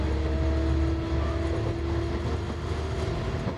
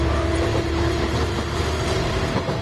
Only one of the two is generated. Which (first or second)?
second